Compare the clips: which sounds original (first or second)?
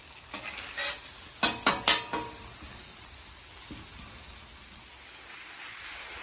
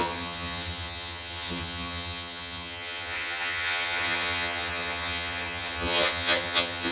first